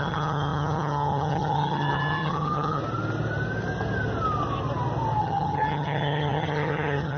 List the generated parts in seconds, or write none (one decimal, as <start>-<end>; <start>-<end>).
0.0-2.8; 5.2-7.2